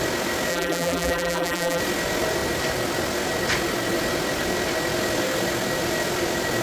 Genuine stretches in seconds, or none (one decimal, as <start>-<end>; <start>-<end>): 0.0-0.5; 1.8-6.6